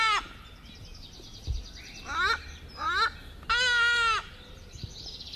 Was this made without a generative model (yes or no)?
yes